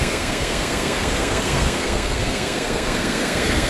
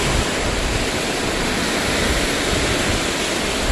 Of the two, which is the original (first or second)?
second